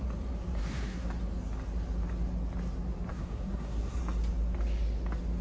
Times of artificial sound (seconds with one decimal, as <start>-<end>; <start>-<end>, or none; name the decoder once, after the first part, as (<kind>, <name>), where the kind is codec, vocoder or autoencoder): 0.6-1.1 (codec, SNAC); 3.1-4.0